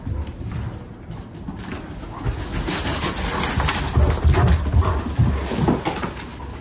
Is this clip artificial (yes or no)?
no